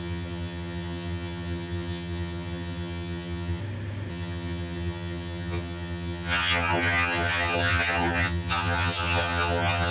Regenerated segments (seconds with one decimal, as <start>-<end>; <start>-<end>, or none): 0.0-3.6; 4.1-9.9